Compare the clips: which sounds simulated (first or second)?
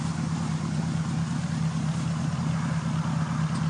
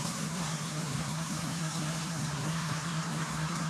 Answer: second